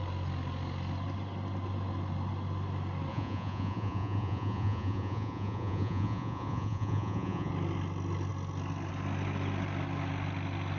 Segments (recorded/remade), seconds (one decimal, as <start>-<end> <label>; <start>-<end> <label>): 0.0-3.1 recorded; 3.1-7.5 remade; 7.5-10.8 recorded